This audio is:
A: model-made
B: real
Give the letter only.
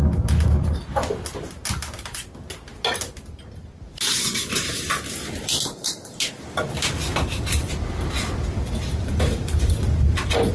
B